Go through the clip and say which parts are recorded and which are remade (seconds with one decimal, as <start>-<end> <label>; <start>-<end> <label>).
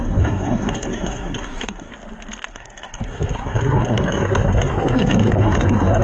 0.0-1.9 remade; 1.9-2.5 recorded; 2.5-6.0 remade